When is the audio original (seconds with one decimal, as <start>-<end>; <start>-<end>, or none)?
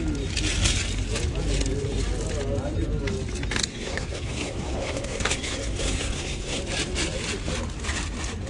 0.0-3.7; 6.6-8.5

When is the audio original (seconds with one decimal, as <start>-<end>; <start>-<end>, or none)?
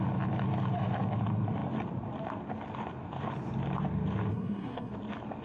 0.0-4.3; 4.9-5.4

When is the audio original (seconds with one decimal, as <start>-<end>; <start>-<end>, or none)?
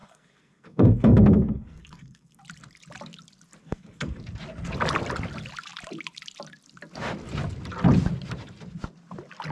2.4-3.6; 4.2-9.5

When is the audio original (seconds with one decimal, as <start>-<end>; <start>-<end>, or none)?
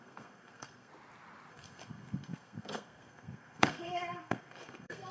0.9-1.5